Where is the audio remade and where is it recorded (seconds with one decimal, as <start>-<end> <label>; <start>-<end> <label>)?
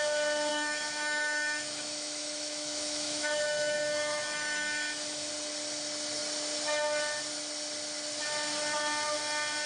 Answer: 0.0-0.5 recorded; 0.5-5.3 remade; 5.3-9.7 recorded